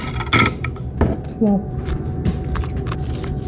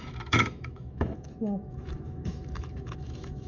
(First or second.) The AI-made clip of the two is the second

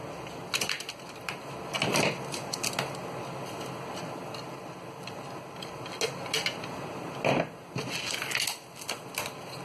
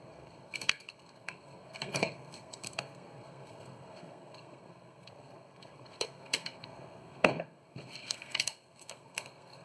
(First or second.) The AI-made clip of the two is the second